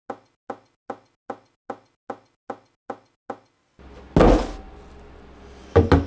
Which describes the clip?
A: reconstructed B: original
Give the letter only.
B